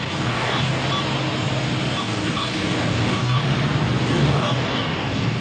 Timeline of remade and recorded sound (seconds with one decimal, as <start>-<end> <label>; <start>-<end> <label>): 0.0-0.8 remade; 0.8-2.0 recorded; 2.0-3.4 remade; 3.4-4.0 recorded; 4.0-5.4 remade